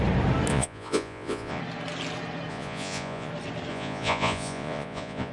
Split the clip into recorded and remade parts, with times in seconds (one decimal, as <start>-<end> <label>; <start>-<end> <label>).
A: 0.0-0.5 recorded; 0.5-1.6 remade; 1.6-2.5 recorded; 2.5-3.3 remade; 3.3-3.7 recorded; 3.7-5.3 remade